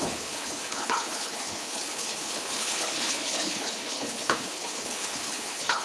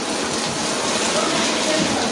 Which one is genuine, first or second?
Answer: second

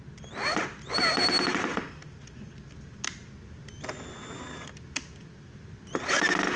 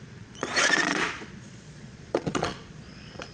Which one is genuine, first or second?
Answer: first